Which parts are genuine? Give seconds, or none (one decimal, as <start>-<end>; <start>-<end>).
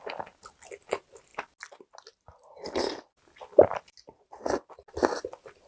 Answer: 0.0-5.7